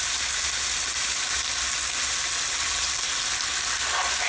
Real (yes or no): yes